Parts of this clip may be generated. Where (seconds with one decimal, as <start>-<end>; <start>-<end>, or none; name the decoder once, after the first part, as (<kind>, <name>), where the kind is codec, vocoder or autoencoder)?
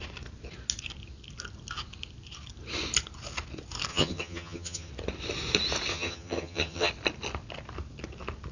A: 3.9-4.9 (vocoder, HiFi-GAN); 5.9-6.9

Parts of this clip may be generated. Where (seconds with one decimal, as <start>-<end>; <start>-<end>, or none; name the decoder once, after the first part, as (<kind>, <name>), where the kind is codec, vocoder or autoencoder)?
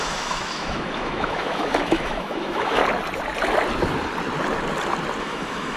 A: 0.0-2.8 (autoencoder, DAC-VAE); 5.2-5.8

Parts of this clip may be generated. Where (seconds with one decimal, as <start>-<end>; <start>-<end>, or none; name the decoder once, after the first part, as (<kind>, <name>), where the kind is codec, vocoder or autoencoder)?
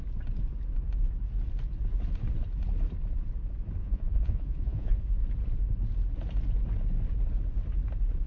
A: 3.8-5.0 (vocoder, Vocos)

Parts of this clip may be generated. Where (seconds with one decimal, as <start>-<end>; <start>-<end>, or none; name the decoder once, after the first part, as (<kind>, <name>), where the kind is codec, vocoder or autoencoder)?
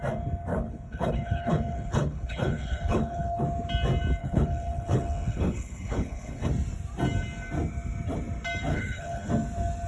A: 0.5-3.4 (codec, HILCodec); 4.2-6.5; 8.7-9.3